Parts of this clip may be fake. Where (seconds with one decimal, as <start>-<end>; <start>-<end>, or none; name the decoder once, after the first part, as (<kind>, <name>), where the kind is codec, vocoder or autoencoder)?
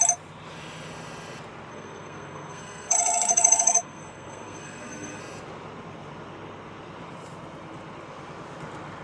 1.7-5.2 (codec, SNAC)